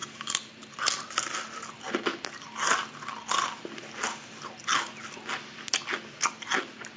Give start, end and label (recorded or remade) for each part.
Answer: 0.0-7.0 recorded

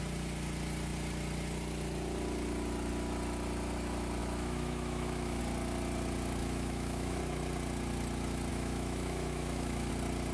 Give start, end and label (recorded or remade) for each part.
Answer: 0.0-4.2 recorded; 4.2-5.4 remade; 5.4-6.4 recorded; 6.4-7.2 remade; 7.2-8.5 recorded; 8.5-9.9 remade; 9.9-10.3 recorded

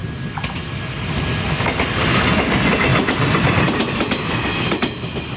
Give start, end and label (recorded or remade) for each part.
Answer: 0.0-5.4 recorded

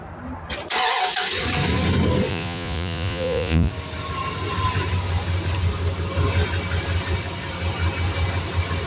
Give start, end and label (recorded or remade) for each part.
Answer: 0.0-2.3 recorded; 2.3-3.7 remade; 3.7-8.9 recorded

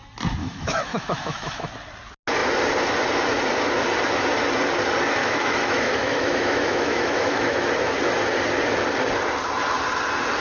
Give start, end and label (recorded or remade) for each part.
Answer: 0.0-0.4 recorded; 0.4-1.7 remade; 1.7-5.2 recorded; 5.2-7.7 remade; 7.7-10.4 recorded

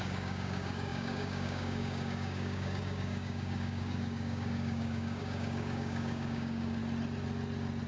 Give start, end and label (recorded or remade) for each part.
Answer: 0.0-6.8 remade; 6.8-7.9 recorded

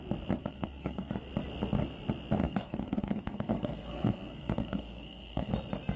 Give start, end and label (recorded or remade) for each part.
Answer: 0.0-0.4 recorded; 0.4-1.1 remade; 1.1-2.4 recorded; 2.4-5.5 remade; 5.5-6.0 recorded

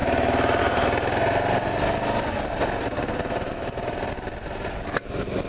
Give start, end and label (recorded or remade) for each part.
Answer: 0.0-5.5 recorded